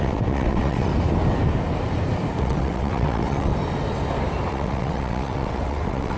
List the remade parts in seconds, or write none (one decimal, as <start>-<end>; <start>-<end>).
0.0-0.9; 2.4-3.5; 4.5-6.2